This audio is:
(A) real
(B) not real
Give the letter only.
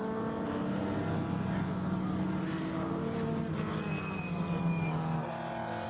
A